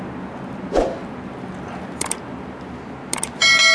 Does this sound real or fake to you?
real